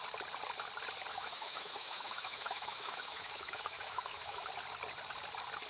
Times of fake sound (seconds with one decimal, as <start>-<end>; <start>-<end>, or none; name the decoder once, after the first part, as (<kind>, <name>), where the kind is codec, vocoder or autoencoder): 1.1-4.5 (autoencoder, DAC-VAE)